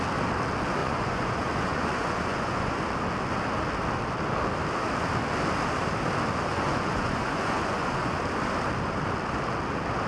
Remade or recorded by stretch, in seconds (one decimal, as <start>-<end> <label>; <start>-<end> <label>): 0.0-0.8 recorded; 0.8-2.8 remade; 2.8-6.5 recorded; 6.5-8.2 remade; 8.2-10.1 recorded